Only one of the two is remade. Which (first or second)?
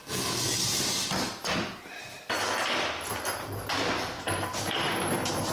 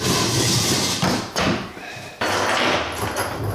second